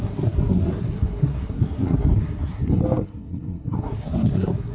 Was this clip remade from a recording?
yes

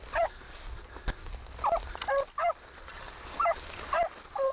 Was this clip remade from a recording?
no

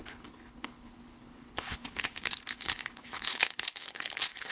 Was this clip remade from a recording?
yes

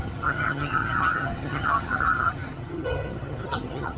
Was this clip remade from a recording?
yes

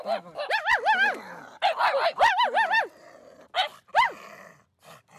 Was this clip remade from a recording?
no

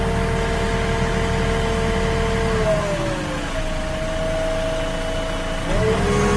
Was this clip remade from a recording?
no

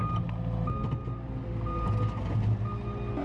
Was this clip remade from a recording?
no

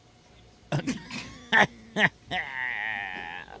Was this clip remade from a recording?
no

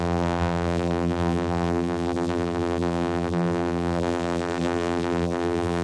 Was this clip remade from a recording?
yes